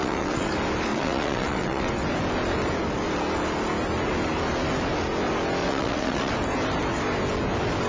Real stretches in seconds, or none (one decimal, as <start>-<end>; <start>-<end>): 0.5-0.9; 1.9-5.6; 6.3-7.9